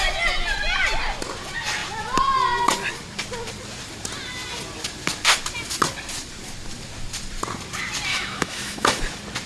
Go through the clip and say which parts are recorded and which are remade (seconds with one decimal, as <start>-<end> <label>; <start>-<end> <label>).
0.0-8.1 recorded; 8.1-9.0 remade; 9.0-9.5 recorded